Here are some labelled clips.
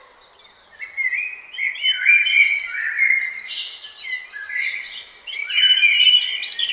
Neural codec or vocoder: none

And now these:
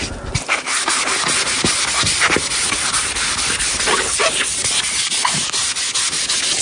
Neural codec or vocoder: none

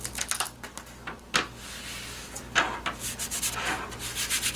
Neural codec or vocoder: none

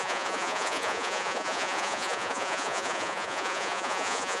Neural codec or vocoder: vocoder, Vocos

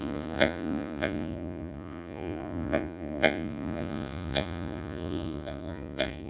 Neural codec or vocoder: vocoder, Vocos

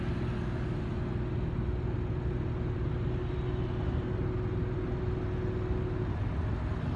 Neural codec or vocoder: none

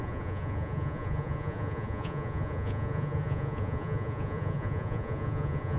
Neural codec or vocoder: vocoder, Vocos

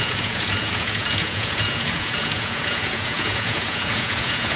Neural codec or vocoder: vocoder, Vocos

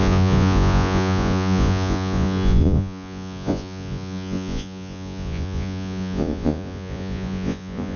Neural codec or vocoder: vocoder, Vocos